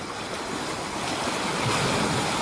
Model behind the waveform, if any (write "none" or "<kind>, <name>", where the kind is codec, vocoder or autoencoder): vocoder, BigVGAN v2